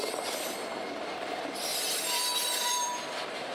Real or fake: fake